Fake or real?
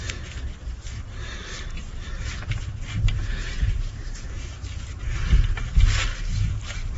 real